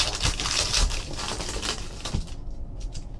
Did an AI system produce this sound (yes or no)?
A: no